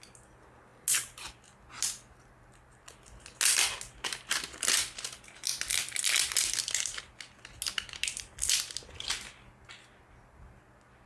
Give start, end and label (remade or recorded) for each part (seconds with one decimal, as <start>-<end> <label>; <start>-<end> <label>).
0.0-11.1 recorded